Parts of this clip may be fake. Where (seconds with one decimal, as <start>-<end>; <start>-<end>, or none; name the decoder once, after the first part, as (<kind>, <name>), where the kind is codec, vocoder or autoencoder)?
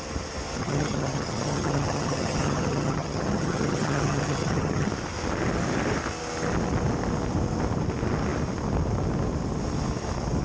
0.6-4.9 (vocoder, HiFi-GAN)